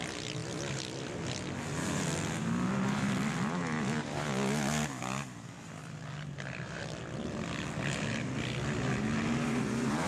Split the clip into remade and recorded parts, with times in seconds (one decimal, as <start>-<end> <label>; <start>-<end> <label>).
0.0-10.1 recorded